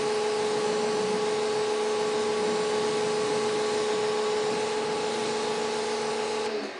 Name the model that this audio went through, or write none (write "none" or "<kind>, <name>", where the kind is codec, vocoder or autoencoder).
none